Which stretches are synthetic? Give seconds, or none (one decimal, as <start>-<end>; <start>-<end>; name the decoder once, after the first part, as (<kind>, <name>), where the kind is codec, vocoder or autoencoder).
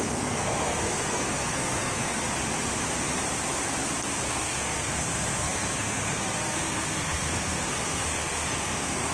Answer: 0.0-2.2 (codec, SNAC); 4.3-9.1